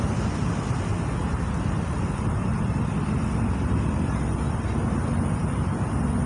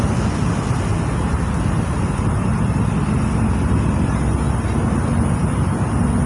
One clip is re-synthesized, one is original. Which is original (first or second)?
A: second